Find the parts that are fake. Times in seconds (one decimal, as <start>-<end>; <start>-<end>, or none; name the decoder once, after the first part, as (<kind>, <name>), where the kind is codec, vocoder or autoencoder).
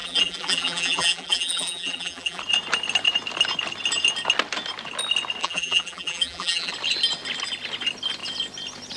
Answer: 0.0-2.4 (vocoder, BigVGAN v2); 5.4-6.7